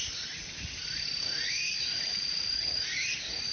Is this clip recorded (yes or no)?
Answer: yes